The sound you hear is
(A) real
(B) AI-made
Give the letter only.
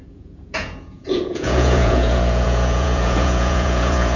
B